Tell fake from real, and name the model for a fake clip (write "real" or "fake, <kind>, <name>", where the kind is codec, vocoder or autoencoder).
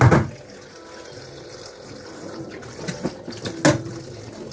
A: real